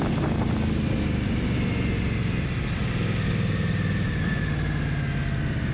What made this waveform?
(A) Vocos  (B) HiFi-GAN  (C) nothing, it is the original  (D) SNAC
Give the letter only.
C